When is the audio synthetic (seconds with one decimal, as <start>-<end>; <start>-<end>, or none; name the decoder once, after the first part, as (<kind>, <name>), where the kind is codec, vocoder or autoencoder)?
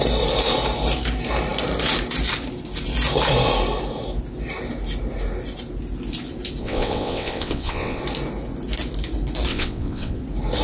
6.6-8.0 (vocoder, WaveNeXt); 9.5-10.2